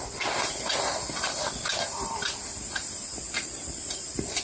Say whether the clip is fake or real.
real